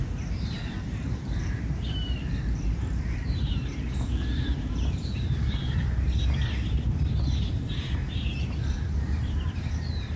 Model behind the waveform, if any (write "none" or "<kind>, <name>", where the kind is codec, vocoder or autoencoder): vocoder, BigVGAN v2